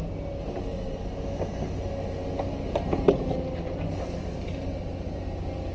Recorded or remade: recorded